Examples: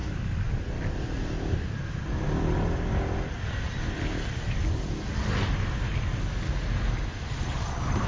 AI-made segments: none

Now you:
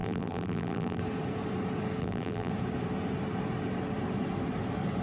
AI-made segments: 0.0-1.0; 2.0-2.5

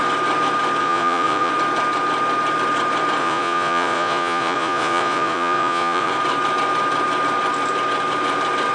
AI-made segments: 0.8-1.5; 3.2-6.1

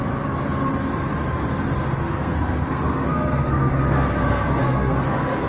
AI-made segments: 2.0-5.5

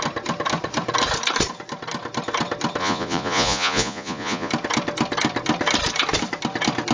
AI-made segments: 2.8-4.5